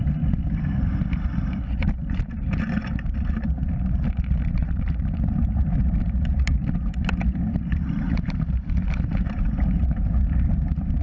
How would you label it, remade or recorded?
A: remade